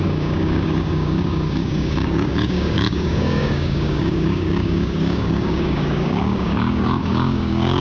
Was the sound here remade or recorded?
remade